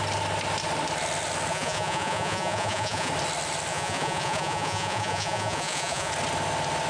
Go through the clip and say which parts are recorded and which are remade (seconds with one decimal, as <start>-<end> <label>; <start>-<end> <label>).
0.0-1.5 recorded; 1.5-3.1 remade; 3.1-3.7 recorded; 3.7-6.1 remade; 6.1-6.9 recorded